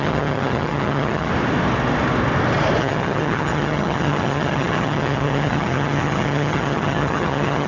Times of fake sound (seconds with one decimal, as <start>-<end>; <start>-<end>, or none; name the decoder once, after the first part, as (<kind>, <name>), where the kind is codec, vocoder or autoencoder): 0.0-1.3 (vocoder, HiFi-GAN); 2.8-7.7